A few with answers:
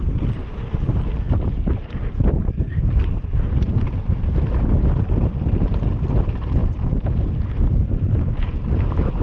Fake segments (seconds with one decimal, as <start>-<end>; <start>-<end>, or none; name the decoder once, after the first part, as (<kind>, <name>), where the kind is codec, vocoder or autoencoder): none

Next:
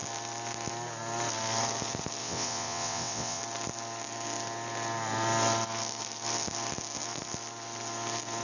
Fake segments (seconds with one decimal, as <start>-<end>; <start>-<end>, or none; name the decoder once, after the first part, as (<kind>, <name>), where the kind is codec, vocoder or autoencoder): 2.2-3.4 (vocoder, WaveNeXt)

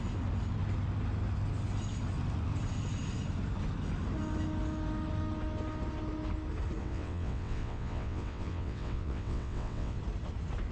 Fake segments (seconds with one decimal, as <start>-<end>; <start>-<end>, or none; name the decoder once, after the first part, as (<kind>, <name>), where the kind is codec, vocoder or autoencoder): 6.8-10.0 (vocoder, WaveNeXt)

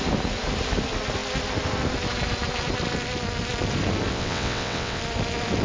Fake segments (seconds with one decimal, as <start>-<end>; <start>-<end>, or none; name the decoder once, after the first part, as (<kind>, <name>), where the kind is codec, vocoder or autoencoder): 4.1-5.0 (vocoder, WaveNeXt)